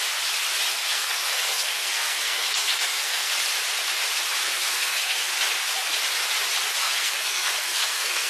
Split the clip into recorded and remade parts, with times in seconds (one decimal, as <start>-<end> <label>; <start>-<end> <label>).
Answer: 0.0-0.7 recorded; 0.7-3.3 remade; 3.3-4.4 recorded; 4.4-5.3 remade; 5.3-6.8 recorded; 6.8-8.3 remade